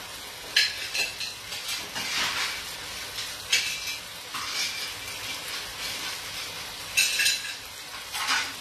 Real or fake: real